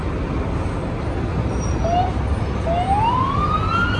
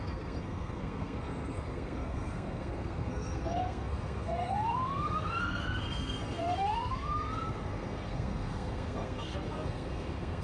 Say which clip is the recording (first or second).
first